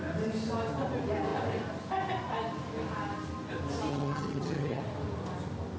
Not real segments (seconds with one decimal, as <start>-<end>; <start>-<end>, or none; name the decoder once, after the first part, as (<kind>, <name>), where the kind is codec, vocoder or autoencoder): 3.9-4.8 (vocoder, HiFi-GAN)